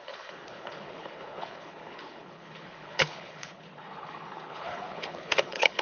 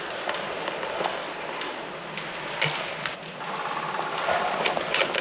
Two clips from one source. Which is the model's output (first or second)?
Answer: first